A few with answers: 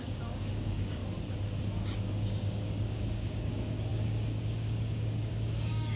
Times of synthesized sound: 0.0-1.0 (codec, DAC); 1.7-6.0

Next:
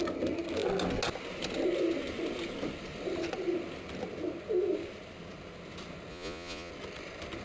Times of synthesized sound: 6.1-6.7 (vocoder, Vocos)

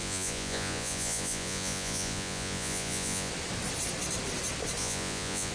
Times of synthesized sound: 0.0-3.3 (vocoder, Vocos); 4.8-5.5

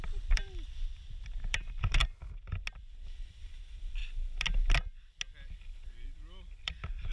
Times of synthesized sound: 0.0-2.0 (vocoder, BigVGAN v2); 3.4-4.0; 6.6-7.1

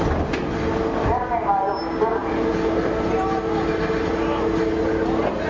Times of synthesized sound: none